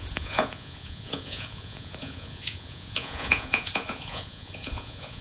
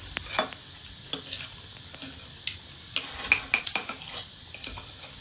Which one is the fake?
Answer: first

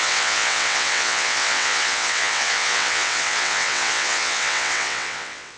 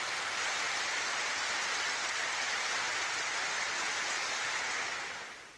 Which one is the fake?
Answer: first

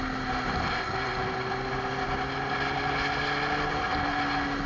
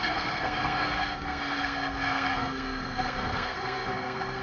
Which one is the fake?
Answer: second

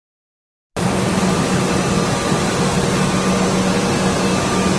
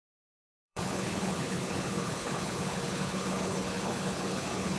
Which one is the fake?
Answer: second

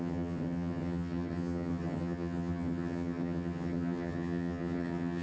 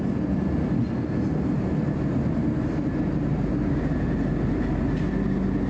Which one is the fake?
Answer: first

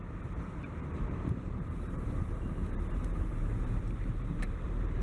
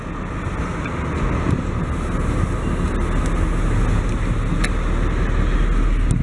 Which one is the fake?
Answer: first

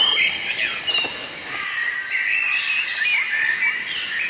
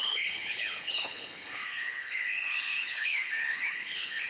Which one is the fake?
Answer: second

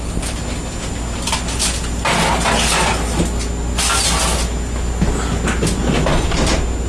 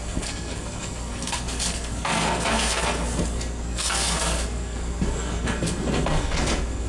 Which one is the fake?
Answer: second